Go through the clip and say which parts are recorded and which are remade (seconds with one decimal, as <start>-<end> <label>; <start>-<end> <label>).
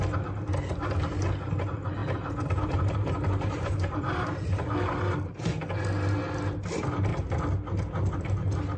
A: 0.0-2.0 recorded; 2.0-6.2 remade; 6.2-8.8 recorded